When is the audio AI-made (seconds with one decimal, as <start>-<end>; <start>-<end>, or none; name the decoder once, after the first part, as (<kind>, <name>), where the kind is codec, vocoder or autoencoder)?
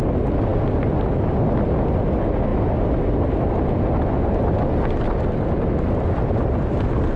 none